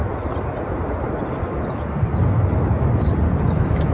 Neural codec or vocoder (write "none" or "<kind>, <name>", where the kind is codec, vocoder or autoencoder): none